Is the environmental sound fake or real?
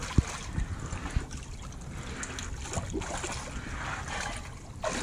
real